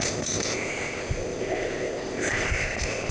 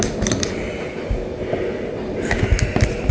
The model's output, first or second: first